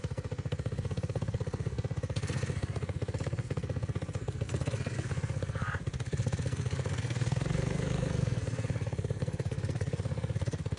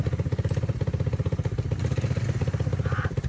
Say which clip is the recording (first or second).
second